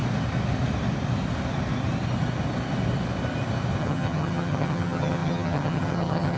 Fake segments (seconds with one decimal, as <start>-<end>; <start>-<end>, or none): 3.8-6.4